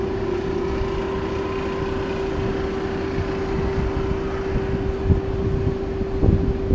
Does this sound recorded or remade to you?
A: recorded